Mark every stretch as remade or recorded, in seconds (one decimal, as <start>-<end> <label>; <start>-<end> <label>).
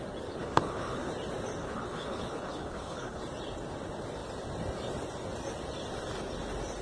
0.0-0.4 recorded; 0.4-1.1 remade; 1.1-1.6 recorded; 1.6-3.2 remade; 3.2-6.8 recorded